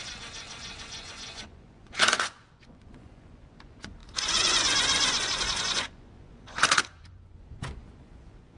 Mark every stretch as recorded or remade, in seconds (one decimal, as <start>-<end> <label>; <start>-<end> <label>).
0.0-8.6 remade